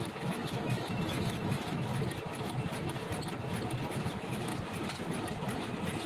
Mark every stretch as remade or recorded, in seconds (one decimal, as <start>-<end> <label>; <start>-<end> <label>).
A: 0.0-1.9 remade; 1.9-3.9 recorded; 3.9-4.5 remade; 4.5-6.1 recorded